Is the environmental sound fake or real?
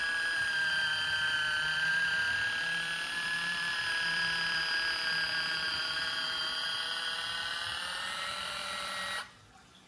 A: fake